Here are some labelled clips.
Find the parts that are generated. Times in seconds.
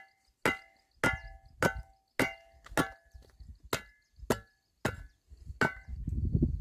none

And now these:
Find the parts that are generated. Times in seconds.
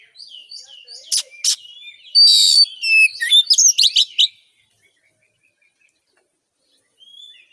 none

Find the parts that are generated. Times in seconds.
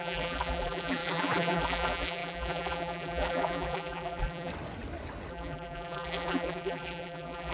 0.0-4.5 (vocoder, BigVGAN v2); 5.3-7.5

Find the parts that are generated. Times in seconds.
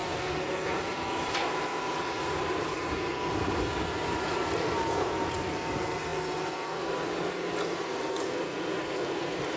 none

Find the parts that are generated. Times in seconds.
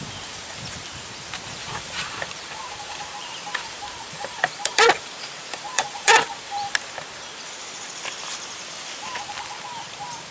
1.6-6.7 (vocoder, BigVGAN v2)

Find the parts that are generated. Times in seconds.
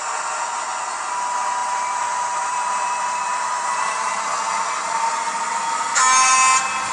1.6-4.2 (vocoder, BigVGAN v2)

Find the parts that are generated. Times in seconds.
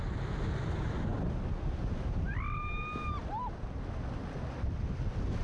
none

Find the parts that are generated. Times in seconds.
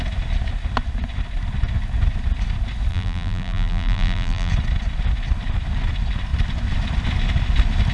2.9-4.5 (vocoder, BigVGAN v2)